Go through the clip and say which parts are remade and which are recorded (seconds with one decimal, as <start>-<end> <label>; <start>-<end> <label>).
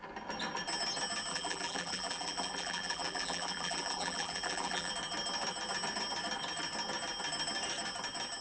0.0-1.3 recorded; 1.3-4.9 remade; 4.9-8.4 recorded